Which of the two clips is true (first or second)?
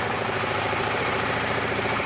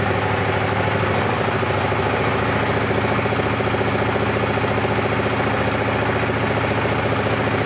second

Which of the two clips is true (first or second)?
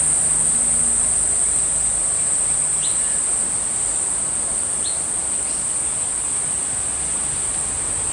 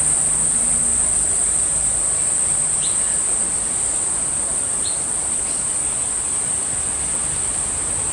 first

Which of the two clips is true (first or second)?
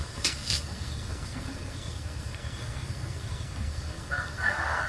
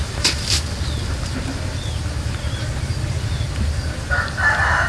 second